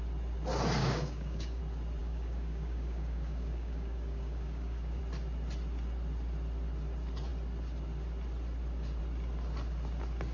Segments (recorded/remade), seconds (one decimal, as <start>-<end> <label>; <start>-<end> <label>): 0.0-0.8 recorded; 0.8-1.6 remade; 1.6-2.0 recorded; 2.0-5.0 remade; 5.0-10.3 recorded